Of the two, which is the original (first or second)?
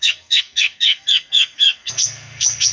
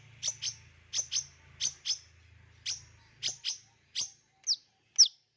second